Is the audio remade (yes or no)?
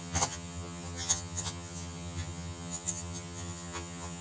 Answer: yes